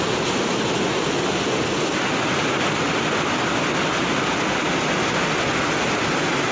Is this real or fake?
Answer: real